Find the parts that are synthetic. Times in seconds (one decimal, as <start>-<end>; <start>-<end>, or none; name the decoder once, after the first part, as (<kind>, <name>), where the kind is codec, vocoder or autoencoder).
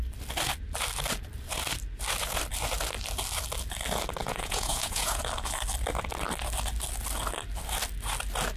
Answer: 4.2-5.2 (vocoder, Vocos)